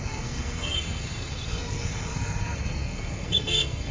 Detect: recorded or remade remade